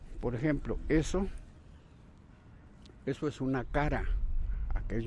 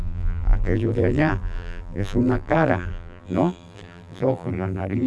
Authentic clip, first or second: first